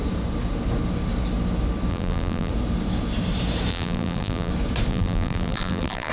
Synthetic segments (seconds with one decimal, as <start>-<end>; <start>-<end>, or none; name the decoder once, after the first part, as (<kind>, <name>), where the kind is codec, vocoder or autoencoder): 1.9-2.5 (vocoder, BigVGAN v2); 3.7-4.5; 4.9-6.1